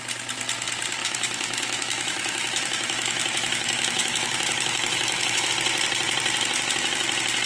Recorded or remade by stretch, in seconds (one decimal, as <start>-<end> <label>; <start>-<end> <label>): 0.0-1.0 recorded; 1.0-5.5 remade; 5.5-7.5 recorded